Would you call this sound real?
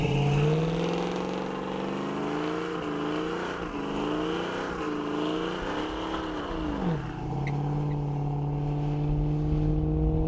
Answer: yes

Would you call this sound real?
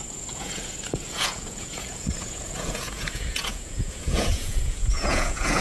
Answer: no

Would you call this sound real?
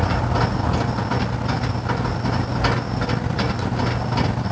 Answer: yes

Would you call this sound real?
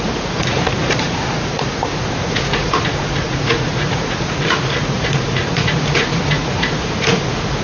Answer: no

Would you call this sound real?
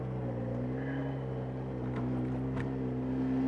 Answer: yes